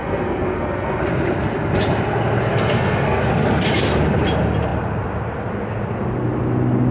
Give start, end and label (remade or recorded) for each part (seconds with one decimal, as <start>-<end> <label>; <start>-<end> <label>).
0.0-1.0 remade; 1.0-2.5 recorded; 2.5-3.2 remade; 3.2-6.9 recorded